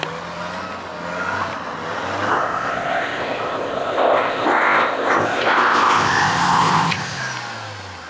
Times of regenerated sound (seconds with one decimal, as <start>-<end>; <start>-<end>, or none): 2.3-7.2